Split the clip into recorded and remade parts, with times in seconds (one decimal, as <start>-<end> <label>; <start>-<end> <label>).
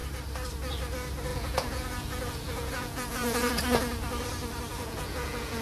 0.0-1.3 recorded; 1.3-3.6 remade; 3.6-4.7 recorded; 4.7-5.6 remade